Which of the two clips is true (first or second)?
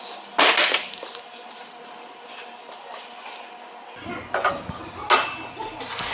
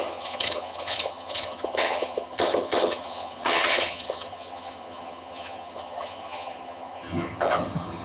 first